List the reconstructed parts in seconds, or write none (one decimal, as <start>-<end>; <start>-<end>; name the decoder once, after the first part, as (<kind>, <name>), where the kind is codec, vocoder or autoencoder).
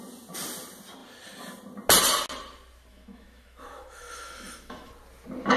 2.9-4.9 (autoencoder, DAC-VAE)